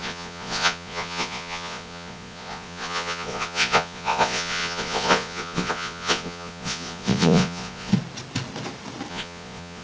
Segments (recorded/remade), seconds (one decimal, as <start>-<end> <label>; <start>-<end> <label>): 0.0-7.9 remade; 7.9-9.1 recorded; 9.1-9.8 remade